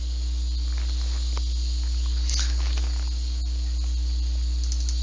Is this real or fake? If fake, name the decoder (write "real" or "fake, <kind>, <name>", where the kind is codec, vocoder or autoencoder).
real